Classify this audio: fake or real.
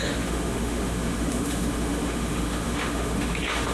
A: fake